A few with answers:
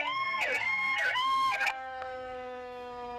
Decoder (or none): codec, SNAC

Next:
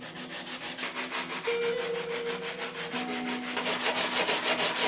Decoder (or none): none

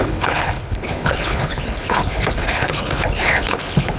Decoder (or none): codec, HILCodec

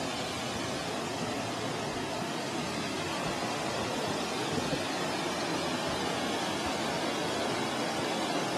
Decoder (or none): none